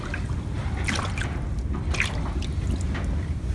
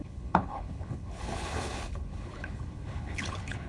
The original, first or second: first